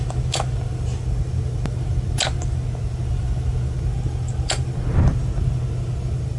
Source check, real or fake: real